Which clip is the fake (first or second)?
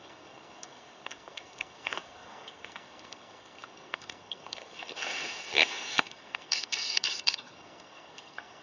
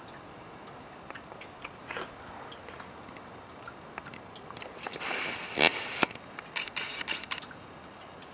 first